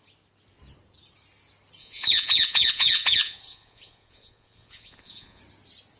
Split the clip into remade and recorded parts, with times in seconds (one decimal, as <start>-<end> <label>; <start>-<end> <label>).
0.0-1.8 recorded; 1.8-5.4 remade; 5.4-6.0 recorded